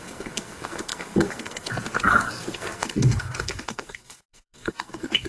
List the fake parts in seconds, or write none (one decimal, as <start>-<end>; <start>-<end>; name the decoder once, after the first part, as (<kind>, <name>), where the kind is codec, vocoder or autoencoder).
0.0-5.3 (codec, SNAC)